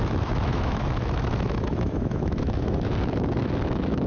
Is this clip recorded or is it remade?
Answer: remade